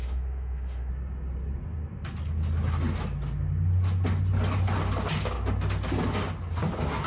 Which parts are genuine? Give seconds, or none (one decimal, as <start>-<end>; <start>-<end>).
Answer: 0.9-7.1

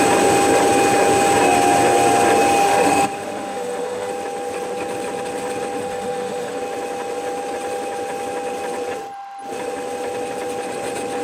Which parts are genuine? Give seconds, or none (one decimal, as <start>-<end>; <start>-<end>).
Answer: 0.0-2.6; 4.1-5.8; 6.6-11.2